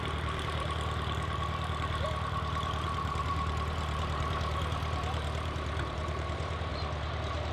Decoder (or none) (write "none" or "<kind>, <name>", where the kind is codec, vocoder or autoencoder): vocoder, BigVGAN v2